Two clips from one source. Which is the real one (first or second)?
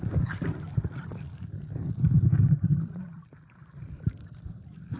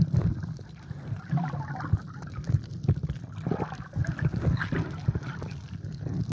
second